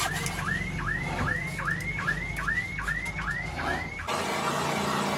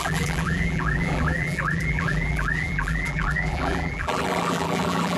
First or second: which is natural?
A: first